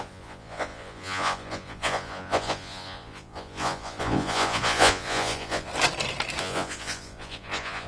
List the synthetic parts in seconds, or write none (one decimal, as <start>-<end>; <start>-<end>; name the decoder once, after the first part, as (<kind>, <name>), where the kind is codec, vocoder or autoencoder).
0.0-5.7 (vocoder, Vocos); 6.4-7.9